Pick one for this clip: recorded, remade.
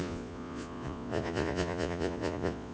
remade